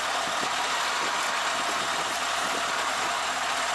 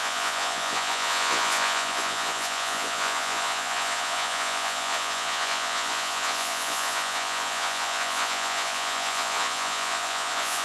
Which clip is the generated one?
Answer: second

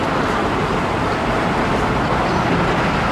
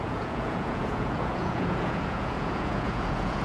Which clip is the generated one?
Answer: second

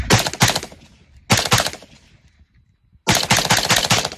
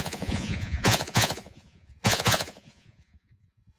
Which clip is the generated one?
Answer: second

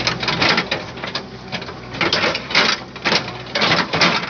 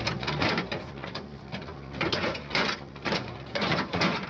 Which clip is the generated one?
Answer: second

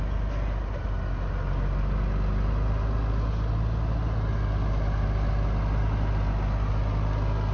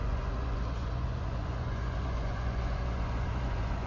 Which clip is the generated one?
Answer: second